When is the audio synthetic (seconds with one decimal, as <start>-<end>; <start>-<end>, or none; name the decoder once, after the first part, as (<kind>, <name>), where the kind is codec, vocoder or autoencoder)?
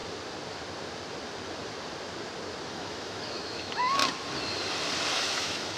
2.7-4.0 (autoencoder, DAC-VAE); 5.1-5.8